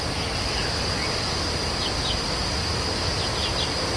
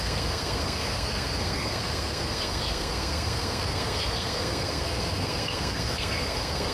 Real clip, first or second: first